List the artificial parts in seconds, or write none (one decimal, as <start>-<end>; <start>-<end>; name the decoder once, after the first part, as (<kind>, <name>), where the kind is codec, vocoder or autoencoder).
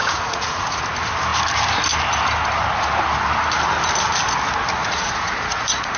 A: 0.0-0.8 (vocoder, Vocos); 4.8-6.0